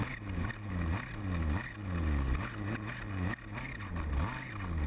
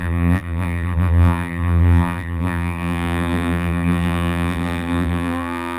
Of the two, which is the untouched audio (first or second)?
first